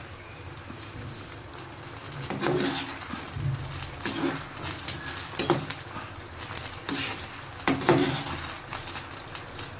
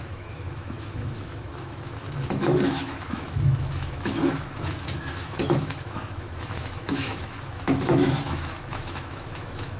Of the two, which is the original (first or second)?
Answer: first